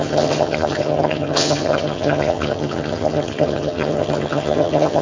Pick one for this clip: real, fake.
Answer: fake